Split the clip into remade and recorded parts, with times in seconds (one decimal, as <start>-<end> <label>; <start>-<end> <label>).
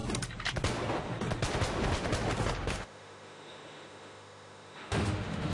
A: 0.0-2.6 recorded; 2.6-5.5 remade